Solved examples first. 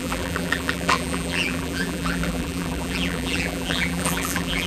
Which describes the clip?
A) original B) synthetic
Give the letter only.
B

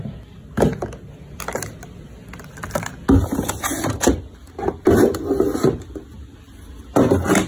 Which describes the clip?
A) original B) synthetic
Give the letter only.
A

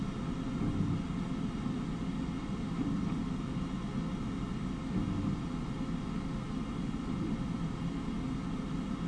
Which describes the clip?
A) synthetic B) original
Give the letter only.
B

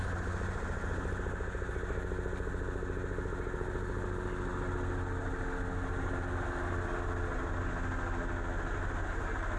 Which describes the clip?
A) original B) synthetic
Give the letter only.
A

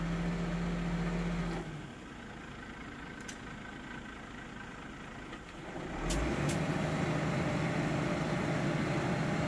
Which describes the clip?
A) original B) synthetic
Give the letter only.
A